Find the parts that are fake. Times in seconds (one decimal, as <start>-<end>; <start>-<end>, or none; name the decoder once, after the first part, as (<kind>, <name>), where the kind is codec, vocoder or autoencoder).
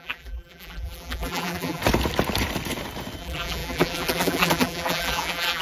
0.0-1.8 (vocoder, BigVGAN v2); 3.2-5.6